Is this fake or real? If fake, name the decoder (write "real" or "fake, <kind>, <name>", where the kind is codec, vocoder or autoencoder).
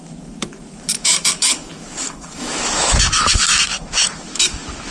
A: fake, autoencoder, DAC-VAE